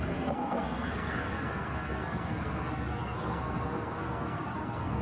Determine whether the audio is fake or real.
fake